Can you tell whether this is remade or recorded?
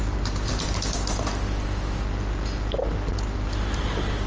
recorded